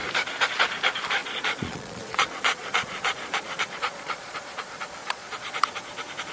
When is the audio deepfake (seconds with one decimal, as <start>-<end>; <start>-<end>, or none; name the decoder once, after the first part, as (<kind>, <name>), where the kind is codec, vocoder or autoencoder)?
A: 1.2-4.6 (vocoder, Vocos); 5.0-5.6